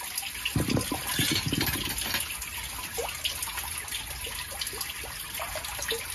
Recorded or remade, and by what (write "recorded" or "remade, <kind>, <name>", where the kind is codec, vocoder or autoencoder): recorded